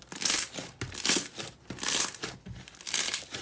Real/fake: real